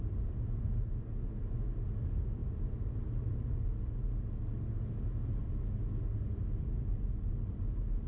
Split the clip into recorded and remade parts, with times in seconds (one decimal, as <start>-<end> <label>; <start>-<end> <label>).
0.0-8.1 recorded